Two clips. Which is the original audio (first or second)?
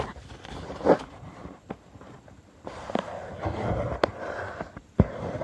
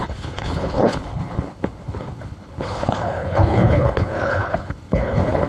first